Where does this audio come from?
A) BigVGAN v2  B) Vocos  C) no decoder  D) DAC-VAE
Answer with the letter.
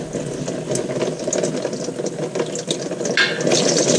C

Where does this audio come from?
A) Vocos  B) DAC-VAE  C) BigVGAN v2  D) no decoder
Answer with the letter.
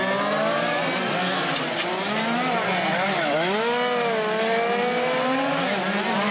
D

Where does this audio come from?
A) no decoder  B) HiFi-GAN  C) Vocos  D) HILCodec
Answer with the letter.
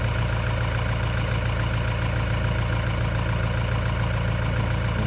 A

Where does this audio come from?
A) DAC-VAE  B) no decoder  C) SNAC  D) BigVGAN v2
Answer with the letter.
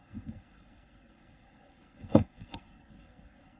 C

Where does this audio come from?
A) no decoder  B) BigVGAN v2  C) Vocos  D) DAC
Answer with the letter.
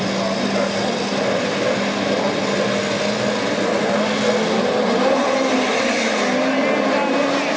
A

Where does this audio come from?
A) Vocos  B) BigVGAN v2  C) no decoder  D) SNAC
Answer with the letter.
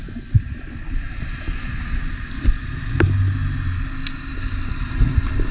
C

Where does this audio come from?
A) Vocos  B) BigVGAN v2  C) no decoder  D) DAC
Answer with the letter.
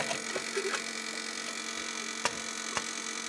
C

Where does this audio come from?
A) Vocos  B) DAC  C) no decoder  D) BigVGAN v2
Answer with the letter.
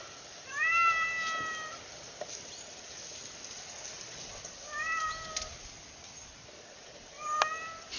C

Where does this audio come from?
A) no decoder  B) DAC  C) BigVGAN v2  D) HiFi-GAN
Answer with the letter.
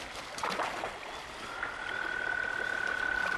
A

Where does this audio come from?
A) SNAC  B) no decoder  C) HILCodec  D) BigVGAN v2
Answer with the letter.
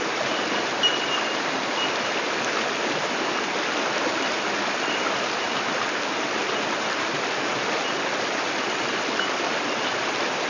B